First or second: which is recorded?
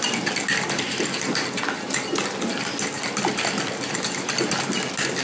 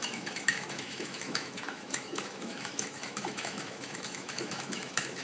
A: first